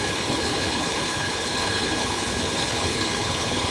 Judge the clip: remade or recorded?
remade